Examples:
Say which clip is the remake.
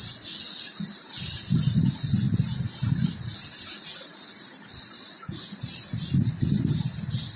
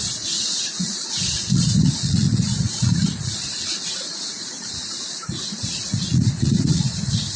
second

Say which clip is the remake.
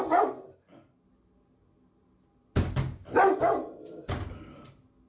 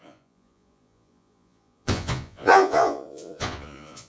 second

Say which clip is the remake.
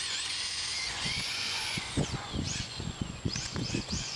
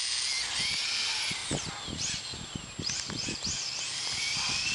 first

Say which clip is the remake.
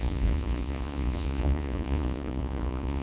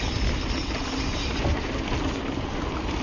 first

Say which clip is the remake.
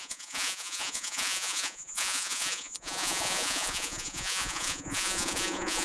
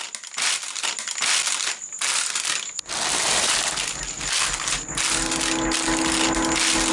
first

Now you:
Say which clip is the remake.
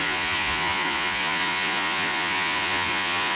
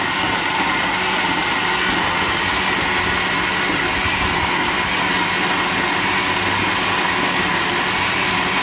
first